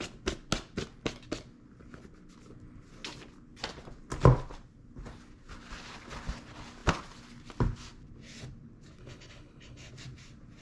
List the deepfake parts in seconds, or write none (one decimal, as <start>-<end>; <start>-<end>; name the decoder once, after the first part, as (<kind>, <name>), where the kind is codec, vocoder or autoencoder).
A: 9.0-9.9 (codec, HILCodec)